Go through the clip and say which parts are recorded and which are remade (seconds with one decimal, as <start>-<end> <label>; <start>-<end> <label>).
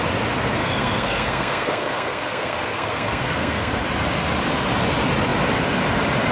0.0-0.6 recorded; 0.6-3.8 remade; 3.8-6.3 recorded